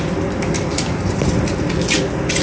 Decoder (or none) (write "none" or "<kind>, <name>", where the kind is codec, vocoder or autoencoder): none